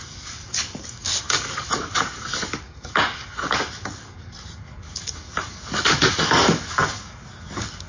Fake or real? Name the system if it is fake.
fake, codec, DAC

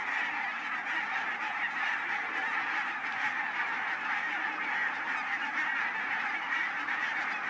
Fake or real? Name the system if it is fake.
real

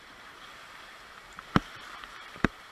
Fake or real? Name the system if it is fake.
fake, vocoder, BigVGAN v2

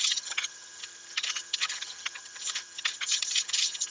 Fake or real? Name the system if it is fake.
fake, vocoder, HiFi-GAN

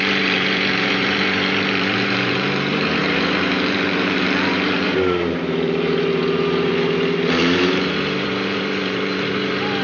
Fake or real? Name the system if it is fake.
fake, vocoder, BigVGAN v2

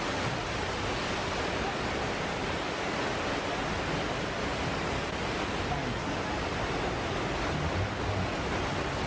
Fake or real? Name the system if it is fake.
real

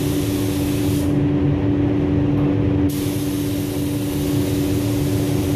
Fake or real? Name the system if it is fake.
real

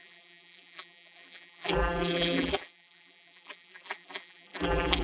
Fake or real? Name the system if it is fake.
fake, vocoder, BigVGAN v2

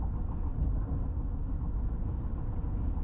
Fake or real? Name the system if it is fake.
real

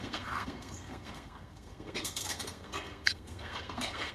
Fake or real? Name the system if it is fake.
fake, codec, SNAC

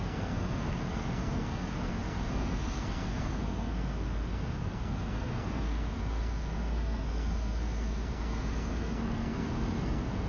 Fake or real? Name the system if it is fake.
fake, codec, SNAC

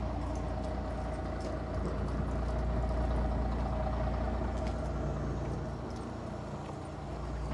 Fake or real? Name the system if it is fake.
real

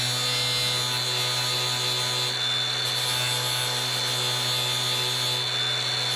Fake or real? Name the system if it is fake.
real